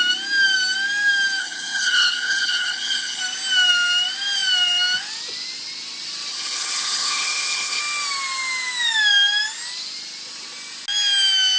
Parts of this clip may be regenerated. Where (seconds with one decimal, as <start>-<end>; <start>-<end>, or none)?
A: 1.4-3.2; 6.3-7.8